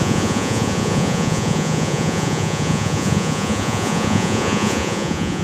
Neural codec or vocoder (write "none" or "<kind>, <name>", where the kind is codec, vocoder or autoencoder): vocoder, Vocos